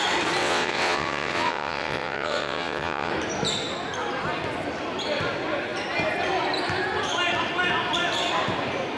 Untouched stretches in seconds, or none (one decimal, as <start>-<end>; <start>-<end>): 0.0-0.4; 3.1-9.0